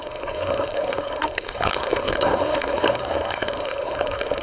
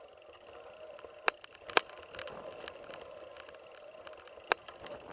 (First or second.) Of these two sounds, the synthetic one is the first